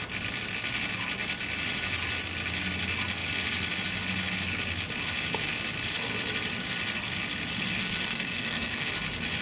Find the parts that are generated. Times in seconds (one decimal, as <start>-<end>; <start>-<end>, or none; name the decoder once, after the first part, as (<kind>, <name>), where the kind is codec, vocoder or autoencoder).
7.8-8.9 (codec, SNAC)